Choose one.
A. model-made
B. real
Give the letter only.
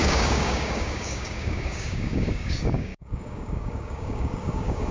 A